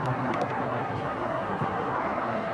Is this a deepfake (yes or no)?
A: yes